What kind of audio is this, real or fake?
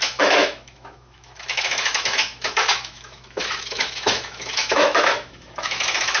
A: fake